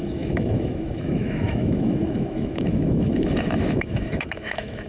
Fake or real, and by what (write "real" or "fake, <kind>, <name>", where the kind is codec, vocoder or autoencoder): fake, autoencoder, DAC-VAE